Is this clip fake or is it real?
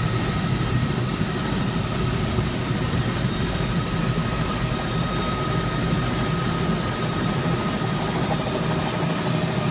fake